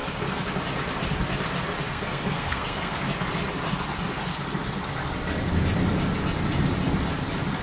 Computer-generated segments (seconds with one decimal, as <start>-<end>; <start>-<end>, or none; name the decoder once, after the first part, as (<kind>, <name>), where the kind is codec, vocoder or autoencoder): 1.9-3.0 (codec, SNAC)